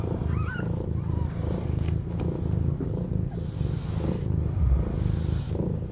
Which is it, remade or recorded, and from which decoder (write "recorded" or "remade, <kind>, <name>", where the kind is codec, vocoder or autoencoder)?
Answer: recorded